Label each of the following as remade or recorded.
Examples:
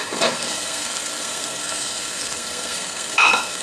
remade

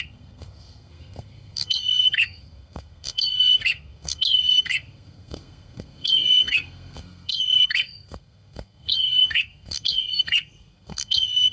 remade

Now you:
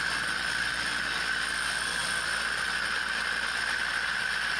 recorded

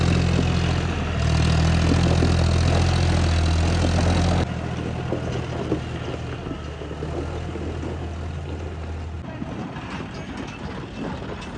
recorded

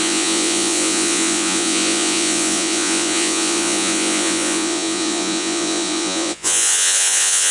remade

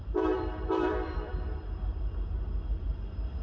remade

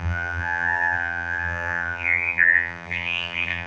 remade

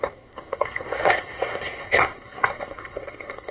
remade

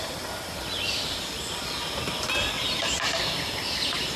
recorded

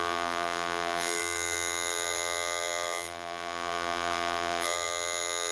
remade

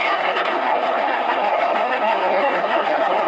remade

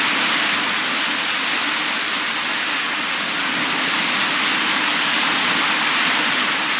recorded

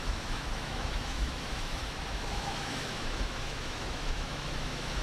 remade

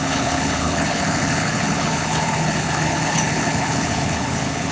remade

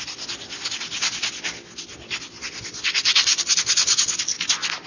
recorded